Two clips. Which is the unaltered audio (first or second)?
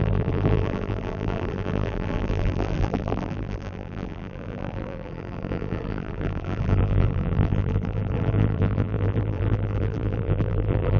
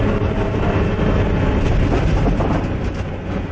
second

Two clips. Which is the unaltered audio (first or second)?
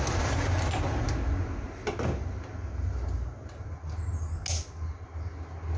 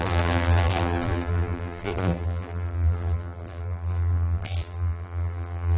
first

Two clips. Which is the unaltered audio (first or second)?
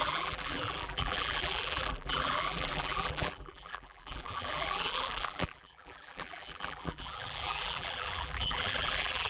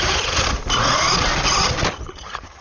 second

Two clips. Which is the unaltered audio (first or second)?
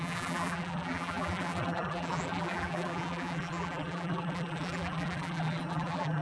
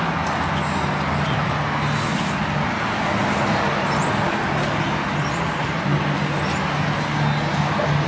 second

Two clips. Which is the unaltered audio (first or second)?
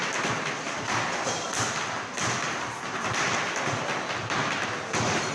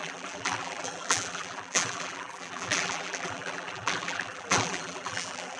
first